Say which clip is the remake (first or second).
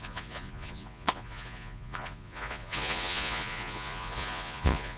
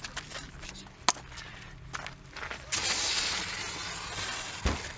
first